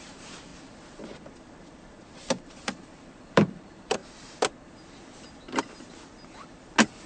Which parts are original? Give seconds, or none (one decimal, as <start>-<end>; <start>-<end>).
0.5-2.4; 4.0-7.1